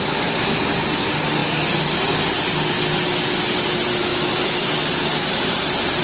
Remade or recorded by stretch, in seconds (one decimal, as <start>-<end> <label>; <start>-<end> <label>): 0.0-4.1 recorded; 4.1-4.7 remade; 4.7-6.0 recorded